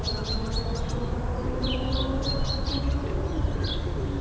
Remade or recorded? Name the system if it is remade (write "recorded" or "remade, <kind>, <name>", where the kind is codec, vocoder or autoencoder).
recorded